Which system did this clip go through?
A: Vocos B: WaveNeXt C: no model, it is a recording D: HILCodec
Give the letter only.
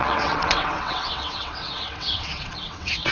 B